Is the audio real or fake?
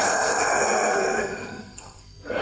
fake